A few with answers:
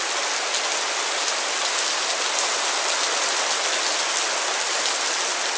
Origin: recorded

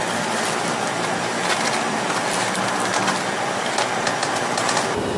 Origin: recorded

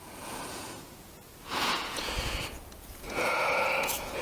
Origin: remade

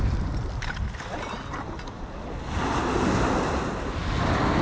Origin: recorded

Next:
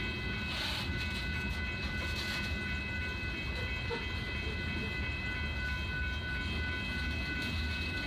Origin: recorded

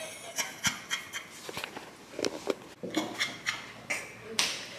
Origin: recorded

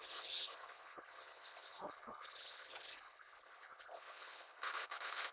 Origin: remade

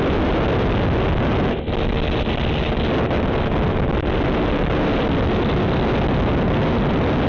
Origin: recorded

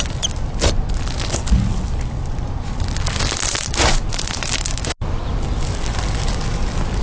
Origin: recorded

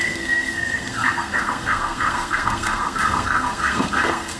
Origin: remade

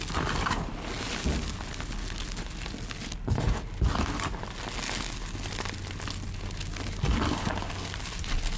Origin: recorded